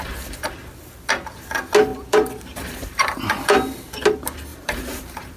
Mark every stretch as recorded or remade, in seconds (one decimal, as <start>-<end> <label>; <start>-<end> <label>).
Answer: 0.0-1.9 recorded; 1.9-3.2 remade; 3.2-4.5 recorded; 4.5-5.4 remade